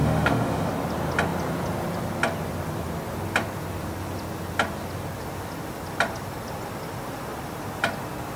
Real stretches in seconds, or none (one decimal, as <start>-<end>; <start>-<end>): 0.7-8.4